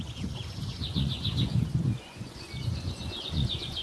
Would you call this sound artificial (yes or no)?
yes